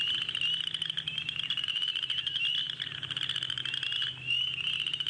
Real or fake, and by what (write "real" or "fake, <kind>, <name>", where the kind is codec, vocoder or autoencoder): real